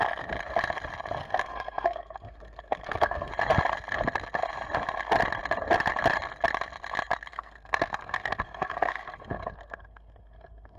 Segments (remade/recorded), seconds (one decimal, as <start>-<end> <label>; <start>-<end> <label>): 0.0-1.2 recorded; 1.2-3.3 remade; 3.3-7.3 recorded; 7.3-10.8 remade